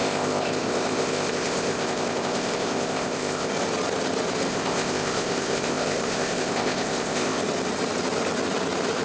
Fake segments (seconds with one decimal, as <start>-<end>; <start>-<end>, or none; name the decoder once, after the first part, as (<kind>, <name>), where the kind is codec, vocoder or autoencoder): 0.0-3.5 (codec, ZipCodec); 4.5-7.4